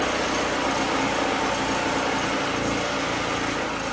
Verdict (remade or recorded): recorded